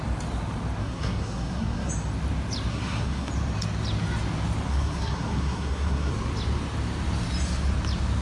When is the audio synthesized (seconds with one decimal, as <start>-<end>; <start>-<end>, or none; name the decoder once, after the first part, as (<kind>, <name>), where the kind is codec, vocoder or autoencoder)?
0.8-1.9 (codec, SNAC); 2.7-3.3; 4.7-6.1